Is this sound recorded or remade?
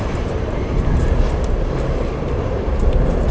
remade